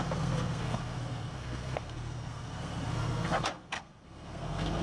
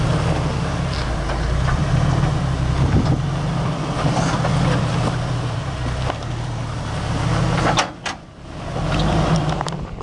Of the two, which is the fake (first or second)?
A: first